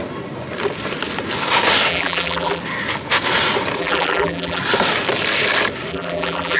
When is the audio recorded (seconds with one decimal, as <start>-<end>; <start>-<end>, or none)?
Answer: 0.0-1.9; 2.6-3.8; 4.6-5.9